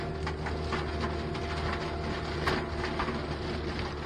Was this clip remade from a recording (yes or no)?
no